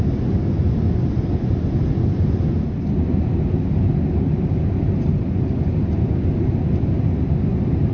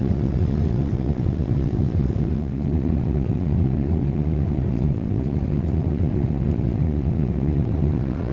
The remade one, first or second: second